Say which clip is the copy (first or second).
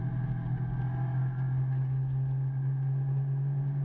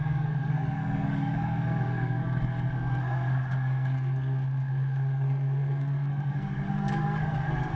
second